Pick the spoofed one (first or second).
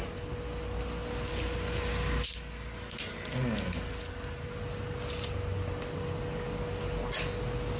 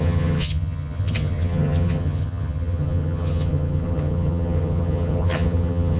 second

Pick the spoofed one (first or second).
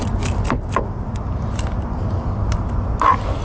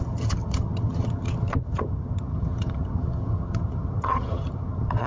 second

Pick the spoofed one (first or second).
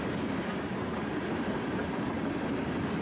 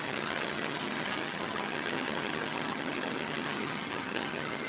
second